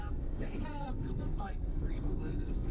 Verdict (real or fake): fake